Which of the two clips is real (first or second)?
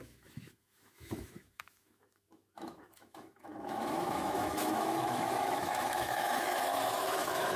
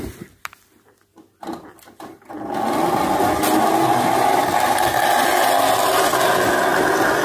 second